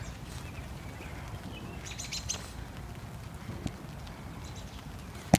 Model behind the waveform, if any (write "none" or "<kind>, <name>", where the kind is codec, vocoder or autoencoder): none